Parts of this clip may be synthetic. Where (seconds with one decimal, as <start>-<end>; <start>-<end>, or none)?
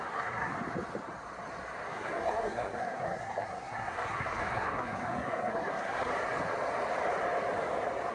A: 0.0-0.5; 1.9-6.1